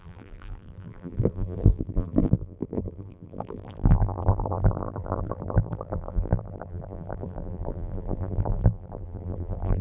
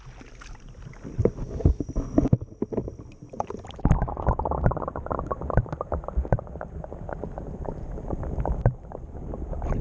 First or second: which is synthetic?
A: first